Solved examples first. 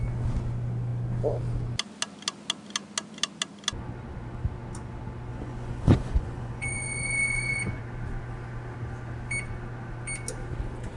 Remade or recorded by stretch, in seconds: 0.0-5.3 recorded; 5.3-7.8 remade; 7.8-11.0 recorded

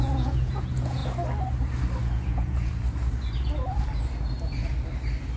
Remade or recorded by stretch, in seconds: 0.0-1.0 remade; 1.0-2.0 recorded; 2.0-2.7 remade; 2.7-5.4 recorded

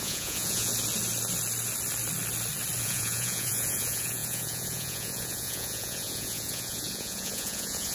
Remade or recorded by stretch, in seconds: 0.0-0.7 remade; 0.7-2.8 recorded; 2.8-7.9 remade

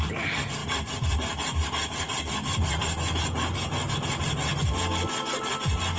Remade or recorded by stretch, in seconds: 0.0-6.0 recorded

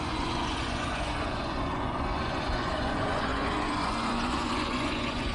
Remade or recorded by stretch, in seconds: 0.0-5.3 remade

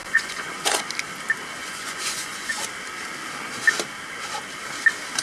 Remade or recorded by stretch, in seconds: 0.0-0.8 remade; 0.8-1.6 recorded; 1.6-2.6 remade; 2.6-5.2 recorded

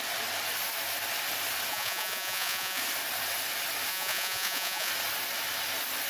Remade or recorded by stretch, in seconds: 0.0-1.7 recorded; 1.7-2.8 remade; 2.8-3.9 recorded; 3.9-4.9 remade; 4.9-6.1 recorded

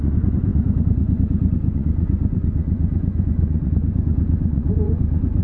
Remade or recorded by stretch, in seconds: 0.0-5.4 remade